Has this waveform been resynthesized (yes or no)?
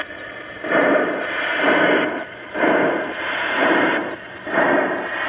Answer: no